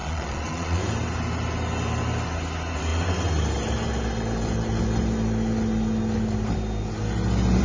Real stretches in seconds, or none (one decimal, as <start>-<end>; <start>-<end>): 0.8-7.6